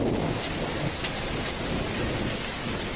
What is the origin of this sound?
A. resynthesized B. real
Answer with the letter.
B